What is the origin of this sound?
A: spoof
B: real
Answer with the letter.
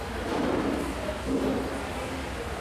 B